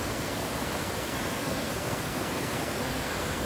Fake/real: fake